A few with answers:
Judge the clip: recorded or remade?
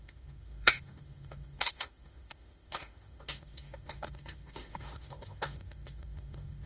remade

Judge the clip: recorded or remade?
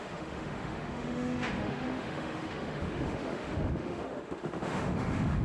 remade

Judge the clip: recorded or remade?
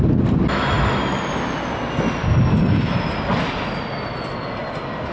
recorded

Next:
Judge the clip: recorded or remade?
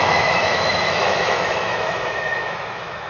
remade